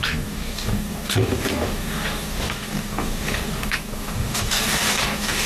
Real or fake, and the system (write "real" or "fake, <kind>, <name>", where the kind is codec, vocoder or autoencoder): fake, codec, DAC